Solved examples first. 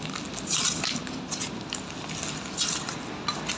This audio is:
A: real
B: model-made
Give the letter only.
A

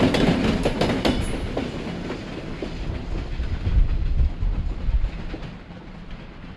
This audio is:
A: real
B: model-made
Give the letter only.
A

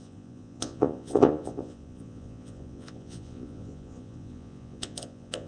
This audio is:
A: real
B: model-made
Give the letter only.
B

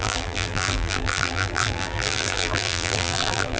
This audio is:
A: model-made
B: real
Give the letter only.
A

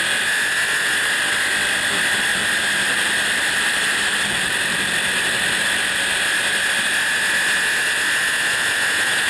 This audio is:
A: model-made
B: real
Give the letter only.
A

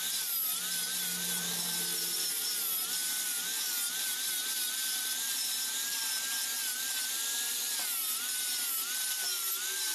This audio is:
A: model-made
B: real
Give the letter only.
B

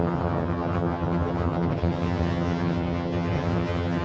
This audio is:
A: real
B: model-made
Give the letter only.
B